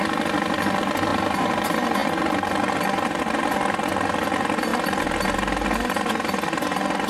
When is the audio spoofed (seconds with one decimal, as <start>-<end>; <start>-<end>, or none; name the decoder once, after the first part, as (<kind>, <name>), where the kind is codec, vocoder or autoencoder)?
none